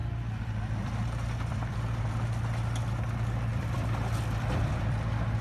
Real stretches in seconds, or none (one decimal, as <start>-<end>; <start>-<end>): none